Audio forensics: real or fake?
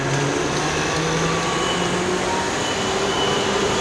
real